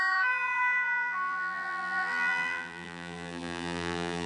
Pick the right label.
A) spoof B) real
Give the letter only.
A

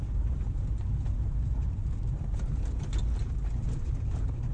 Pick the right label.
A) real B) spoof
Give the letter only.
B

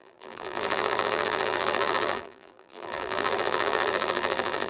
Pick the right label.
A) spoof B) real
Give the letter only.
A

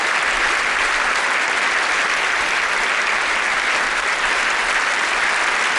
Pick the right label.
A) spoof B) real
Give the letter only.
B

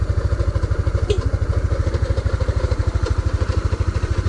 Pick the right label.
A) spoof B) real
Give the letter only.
A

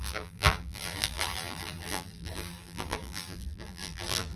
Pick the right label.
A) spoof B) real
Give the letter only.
A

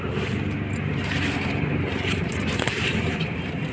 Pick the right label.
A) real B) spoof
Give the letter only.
B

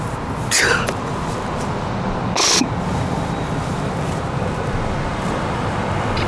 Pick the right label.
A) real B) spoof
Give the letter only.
A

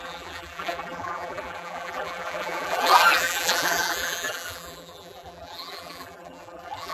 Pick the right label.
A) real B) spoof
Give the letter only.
B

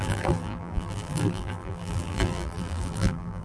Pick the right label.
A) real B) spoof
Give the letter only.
B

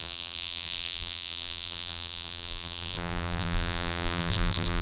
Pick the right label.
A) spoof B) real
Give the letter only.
A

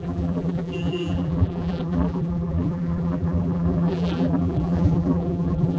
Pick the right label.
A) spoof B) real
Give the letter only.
A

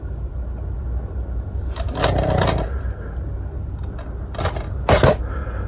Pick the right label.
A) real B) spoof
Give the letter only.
A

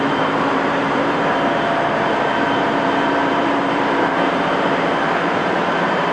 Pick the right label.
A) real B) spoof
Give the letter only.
B